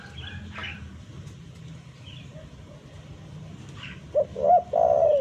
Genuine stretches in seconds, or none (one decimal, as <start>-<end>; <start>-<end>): 0.0-5.2